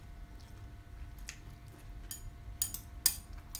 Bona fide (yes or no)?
yes